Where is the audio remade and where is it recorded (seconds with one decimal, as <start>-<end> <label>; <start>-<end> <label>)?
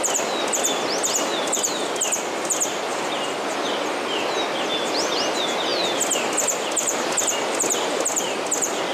0.0-8.9 recorded